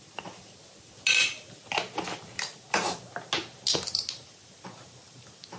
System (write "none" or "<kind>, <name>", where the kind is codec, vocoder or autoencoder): none